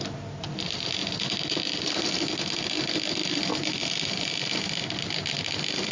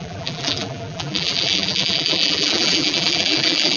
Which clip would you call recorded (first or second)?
first